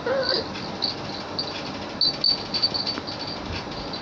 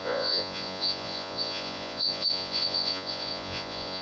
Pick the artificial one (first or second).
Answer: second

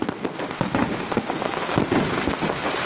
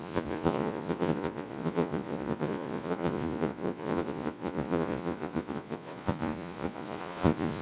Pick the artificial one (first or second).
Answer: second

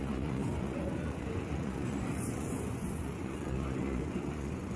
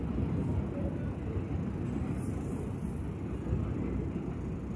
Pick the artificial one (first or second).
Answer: first